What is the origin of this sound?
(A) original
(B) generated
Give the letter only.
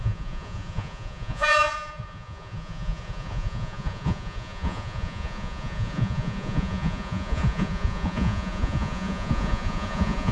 B